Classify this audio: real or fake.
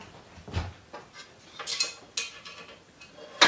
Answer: real